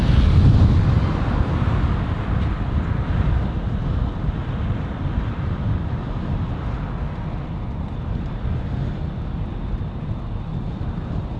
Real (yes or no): yes